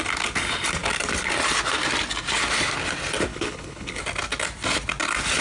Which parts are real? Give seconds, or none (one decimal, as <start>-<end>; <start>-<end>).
0.0-3.3; 4.0-5.4